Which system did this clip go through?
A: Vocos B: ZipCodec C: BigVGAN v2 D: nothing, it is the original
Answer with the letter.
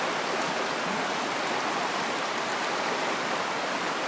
D